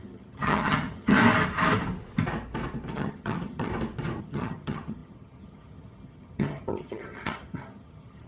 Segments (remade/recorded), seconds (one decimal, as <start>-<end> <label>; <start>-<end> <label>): 0.0-1.2 remade; 1.2-2.9 recorded; 2.9-3.7 remade; 3.7-4.2 recorded; 4.2-8.3 remade